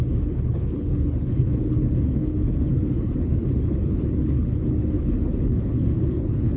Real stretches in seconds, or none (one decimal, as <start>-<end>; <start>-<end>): none